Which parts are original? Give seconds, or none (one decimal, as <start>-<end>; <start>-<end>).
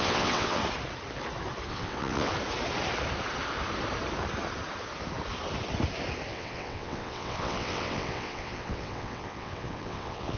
0.6-1.7; 2.3-6.3